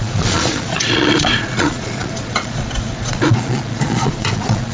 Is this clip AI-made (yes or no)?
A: yes